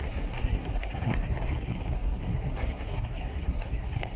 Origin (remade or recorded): remade